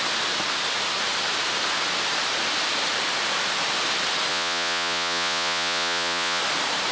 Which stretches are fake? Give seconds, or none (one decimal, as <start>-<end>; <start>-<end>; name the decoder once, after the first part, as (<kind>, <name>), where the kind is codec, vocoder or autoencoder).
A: 4.3-6.4 (vocoder, Vocos)